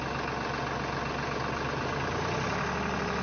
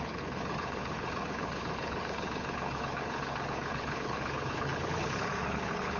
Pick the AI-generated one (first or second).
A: second